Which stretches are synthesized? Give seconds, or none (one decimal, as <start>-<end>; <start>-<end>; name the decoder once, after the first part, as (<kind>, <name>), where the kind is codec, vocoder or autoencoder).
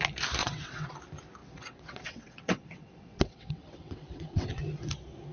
0.4-0.9 (vocoder, WaveNeXt); 1.4-4.6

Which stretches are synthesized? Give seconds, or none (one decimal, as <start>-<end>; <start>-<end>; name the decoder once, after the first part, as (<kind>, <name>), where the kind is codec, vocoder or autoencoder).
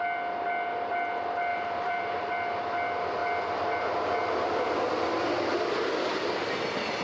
1.5-2.3 (vocoder, BigVGAN v2)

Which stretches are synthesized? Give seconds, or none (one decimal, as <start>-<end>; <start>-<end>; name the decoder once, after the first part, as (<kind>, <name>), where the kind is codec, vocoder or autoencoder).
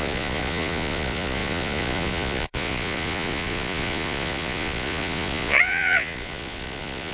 0.0-7.1 (vocoder, Vocos)